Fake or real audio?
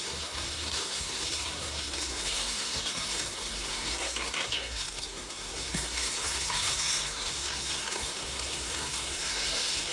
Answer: fake